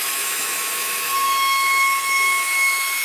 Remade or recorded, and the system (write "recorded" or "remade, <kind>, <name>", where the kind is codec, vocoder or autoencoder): remade, autoencoder, DAC-VAE